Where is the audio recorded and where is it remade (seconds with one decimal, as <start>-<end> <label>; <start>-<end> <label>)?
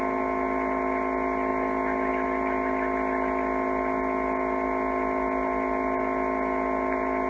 0.0-7.3 recorded